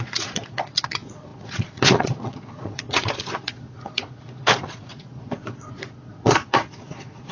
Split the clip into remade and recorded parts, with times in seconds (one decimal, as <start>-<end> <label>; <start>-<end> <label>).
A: 0.0-7.3 remade